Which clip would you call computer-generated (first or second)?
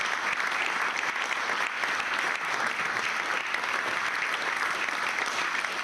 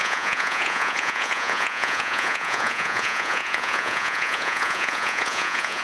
second